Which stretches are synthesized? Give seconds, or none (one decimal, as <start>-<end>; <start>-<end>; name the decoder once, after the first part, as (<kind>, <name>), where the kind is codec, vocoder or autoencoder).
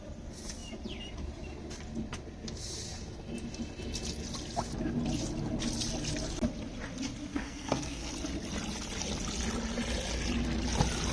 7.3-8.1 (codec, SNAC)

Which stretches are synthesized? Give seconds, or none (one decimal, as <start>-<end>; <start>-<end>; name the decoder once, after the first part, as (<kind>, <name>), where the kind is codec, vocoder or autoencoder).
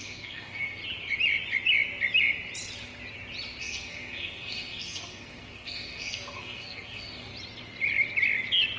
0.0-0.8 (codec, SNAC); 3.6-7.3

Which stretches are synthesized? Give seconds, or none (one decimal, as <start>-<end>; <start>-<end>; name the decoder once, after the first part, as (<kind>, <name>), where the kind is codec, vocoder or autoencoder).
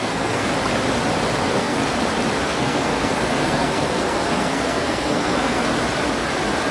0.0-0.5 (codec, SNAC); 1.4-1.8; 2.4-5.7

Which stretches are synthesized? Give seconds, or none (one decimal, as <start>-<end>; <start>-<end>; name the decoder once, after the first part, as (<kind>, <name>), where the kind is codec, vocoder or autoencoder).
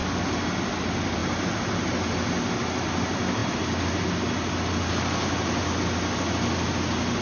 none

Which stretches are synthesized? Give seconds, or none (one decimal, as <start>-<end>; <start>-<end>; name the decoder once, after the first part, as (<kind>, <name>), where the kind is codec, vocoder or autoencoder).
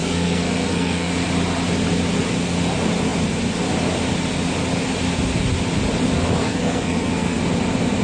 0.0-1.1 (codec, SNAC); 6.4-7.4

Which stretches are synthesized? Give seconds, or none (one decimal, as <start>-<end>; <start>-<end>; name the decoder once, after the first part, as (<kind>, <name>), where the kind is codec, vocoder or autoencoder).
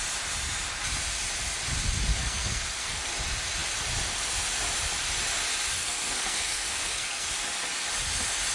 2.1-3.1 (codec, SNAC); 5.8-7.3